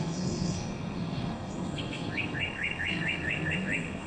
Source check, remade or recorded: remade